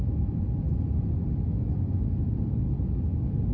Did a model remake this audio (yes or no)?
no